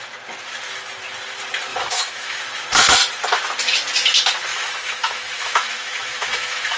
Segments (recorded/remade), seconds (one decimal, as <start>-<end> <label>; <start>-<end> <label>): 0.0-1.7 recorded; 1.7-2.4 remade; 2.4-4.5 recorded; 4.5-6.8 remade